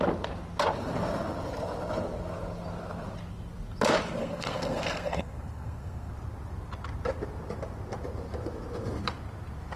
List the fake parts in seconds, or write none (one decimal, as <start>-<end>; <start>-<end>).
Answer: 4.2-6.1